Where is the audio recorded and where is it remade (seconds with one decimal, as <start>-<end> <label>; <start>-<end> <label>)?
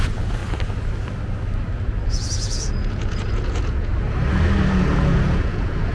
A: 0.0-0.4 remade; 0.4-2.1 recorded; 2.1-3.9 remade; 3.9-4.7 recorded; 4.7-5.9 remade